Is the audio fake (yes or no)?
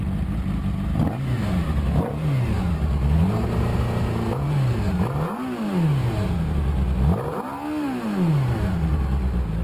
no